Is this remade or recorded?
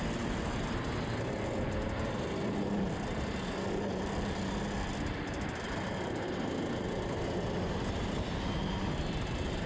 recorded